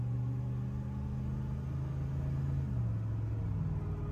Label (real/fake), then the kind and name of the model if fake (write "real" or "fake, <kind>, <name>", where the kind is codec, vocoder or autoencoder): real